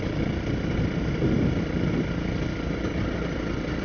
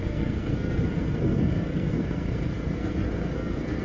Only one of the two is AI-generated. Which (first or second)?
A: second